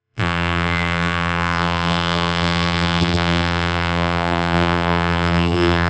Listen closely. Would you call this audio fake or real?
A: fake